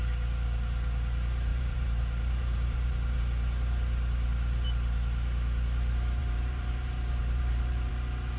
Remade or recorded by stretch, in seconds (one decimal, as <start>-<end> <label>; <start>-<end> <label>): 0.0-1.5 recorded; 1.5-3.2 remade; 3.2-6.2 recorded; 6.2-7.9 remade; 7.9-8.4 recorded